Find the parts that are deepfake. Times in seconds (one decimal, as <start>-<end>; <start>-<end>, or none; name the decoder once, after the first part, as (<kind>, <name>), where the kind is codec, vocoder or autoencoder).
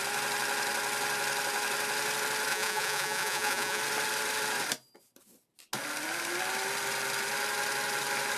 2.5-3.8 (vocoder, Vocos)